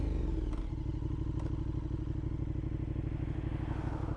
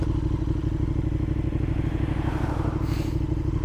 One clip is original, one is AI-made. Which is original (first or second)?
first